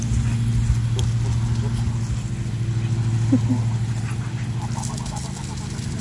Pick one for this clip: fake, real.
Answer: real